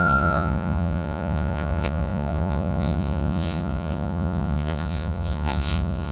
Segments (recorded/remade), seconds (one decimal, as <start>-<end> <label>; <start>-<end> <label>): 0.0-6.1 remade